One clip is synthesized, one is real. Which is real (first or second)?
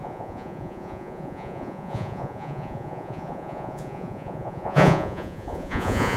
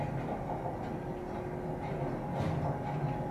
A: second